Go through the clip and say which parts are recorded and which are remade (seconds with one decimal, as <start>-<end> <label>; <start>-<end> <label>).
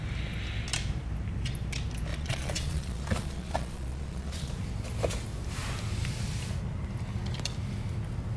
0.0-2.1 recorded; 2.1-4.5 remade; 4.5-8.4 recorded